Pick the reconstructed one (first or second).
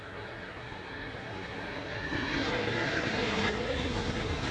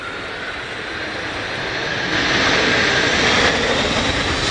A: first